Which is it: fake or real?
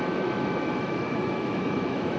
fake